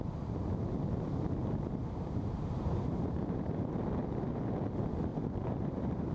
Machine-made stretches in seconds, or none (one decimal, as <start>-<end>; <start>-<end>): 1.8-4.0; 5.1-6.1